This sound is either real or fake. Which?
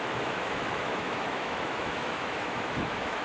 fake